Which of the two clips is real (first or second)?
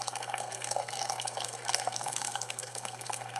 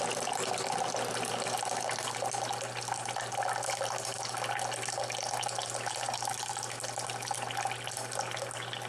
second